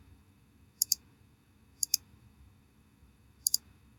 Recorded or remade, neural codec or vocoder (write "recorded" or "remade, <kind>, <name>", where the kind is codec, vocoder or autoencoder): remade, autoencoder, DAC-VAE